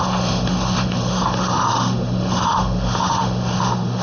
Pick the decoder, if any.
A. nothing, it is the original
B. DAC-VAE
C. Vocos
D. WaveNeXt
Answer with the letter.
B